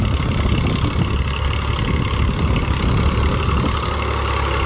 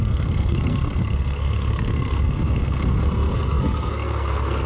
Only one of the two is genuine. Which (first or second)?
first